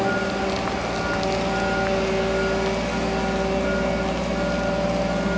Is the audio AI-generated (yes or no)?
no